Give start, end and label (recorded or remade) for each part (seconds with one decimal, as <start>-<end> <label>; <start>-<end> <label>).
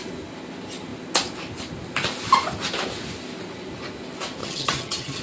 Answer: 0.0-4.4 recorded; 4.4-5.2 remade